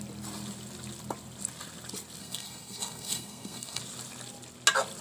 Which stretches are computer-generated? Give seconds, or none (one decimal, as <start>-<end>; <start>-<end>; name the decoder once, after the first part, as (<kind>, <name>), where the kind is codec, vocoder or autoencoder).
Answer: 2.2-3.8 (codec, SNAC)

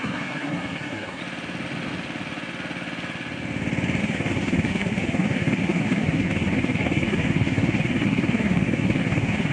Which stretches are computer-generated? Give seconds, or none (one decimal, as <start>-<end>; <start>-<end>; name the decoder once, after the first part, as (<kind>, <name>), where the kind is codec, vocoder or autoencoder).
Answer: 0.0-1.2 (codec, SNAC); 4.0-9.5